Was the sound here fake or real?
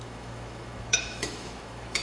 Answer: fake